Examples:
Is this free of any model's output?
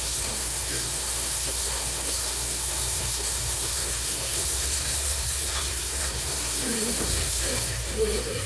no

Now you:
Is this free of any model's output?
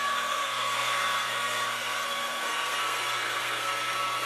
no